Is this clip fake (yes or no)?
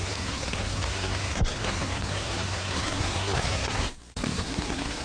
yes